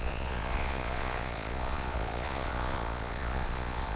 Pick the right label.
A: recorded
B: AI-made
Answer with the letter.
B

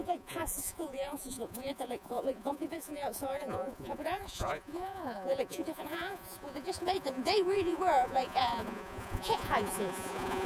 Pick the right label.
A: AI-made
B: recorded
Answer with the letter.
A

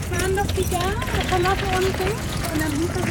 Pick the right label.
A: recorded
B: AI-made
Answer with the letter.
B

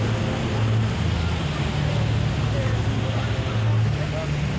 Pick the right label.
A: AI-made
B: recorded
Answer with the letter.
B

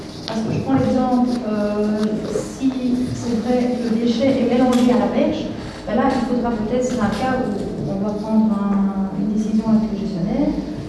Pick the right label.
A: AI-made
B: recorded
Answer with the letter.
B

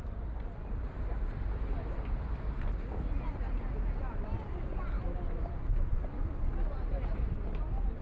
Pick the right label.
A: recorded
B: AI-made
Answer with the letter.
A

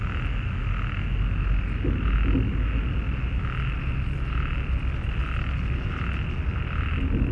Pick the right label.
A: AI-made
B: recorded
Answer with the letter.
B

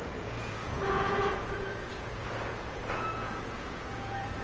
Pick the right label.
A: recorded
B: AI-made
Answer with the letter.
B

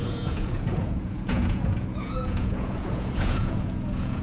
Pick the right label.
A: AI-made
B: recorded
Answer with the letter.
A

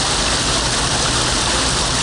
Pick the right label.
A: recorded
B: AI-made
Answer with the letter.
A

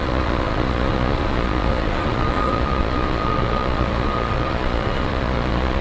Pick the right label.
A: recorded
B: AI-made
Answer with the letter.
B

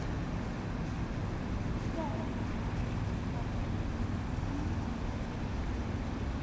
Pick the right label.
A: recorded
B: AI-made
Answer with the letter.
A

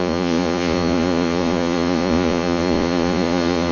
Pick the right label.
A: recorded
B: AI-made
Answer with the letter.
B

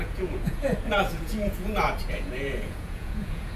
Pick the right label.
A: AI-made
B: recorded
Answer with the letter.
A